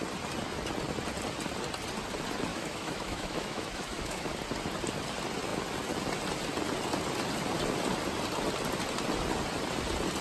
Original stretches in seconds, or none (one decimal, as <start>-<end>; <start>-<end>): 0.0-2.5; 4.3-10.2

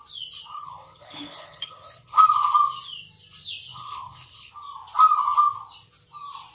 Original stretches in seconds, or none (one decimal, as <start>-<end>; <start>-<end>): 0.0-0.5; 2.2-3.7; 4.5-6.5

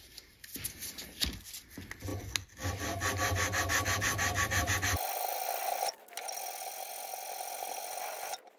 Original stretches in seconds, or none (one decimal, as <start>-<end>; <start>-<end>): 0.0-8.6

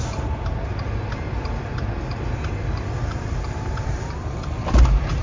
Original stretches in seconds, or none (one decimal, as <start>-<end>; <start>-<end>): 0.0-3.0

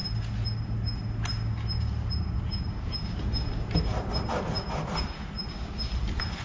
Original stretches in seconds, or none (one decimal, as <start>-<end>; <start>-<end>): 0.0-6.4

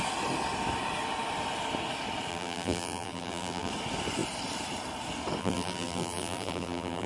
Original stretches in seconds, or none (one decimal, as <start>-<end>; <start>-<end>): 0.0-2.3; 3.7-5.4